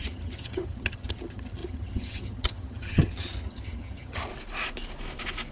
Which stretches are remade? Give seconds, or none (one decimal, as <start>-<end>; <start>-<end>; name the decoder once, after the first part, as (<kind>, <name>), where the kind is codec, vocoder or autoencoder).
0.0-4.3 (vocoder, HiFi-GAN)